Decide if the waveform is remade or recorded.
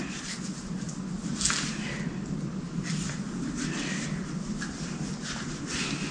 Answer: recorded